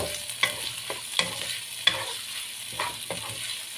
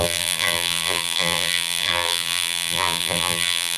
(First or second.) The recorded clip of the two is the first